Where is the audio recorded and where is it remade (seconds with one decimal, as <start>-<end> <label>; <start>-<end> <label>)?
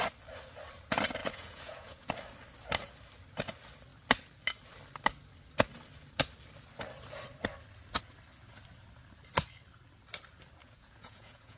0.0-1.2 recorded; 1.2-2.1 remade; 2.1-10.6 recorded; 10.6-11.6 remade